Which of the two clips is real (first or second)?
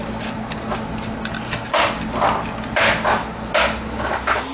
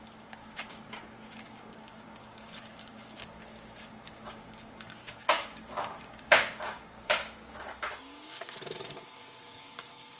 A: first